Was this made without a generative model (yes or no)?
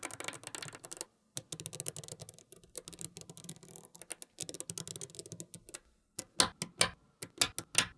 yes